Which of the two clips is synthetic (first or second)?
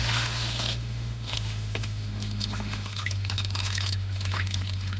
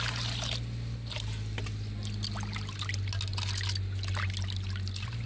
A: first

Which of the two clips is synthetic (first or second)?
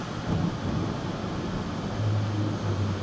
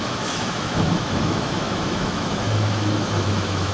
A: second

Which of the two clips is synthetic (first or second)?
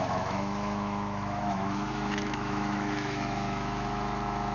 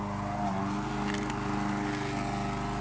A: first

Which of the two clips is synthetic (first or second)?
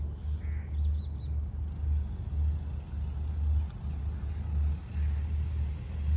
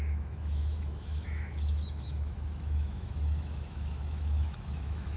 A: second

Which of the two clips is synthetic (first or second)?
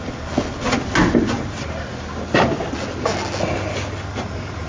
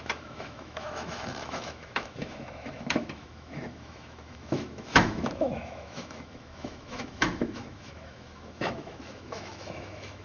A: second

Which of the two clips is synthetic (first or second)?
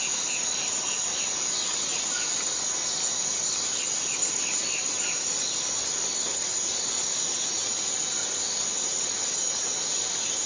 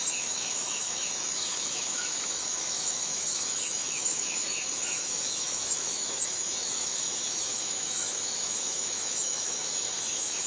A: second